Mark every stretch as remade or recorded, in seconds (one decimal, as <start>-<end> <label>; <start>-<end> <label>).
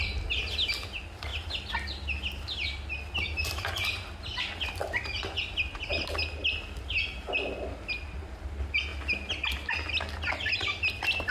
0.0-11.3 recorded